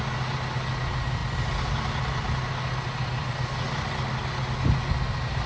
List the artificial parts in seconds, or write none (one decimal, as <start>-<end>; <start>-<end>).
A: none